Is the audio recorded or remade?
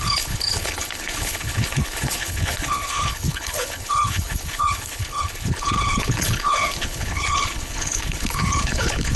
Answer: remade